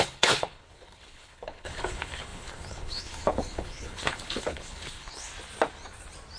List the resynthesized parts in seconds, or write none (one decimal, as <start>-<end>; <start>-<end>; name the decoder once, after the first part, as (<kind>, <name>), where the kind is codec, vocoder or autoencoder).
0.0-5.3 (codec, HILCodec)